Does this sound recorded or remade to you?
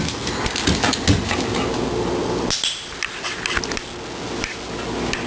recorded